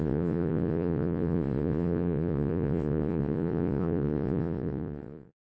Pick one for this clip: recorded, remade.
remade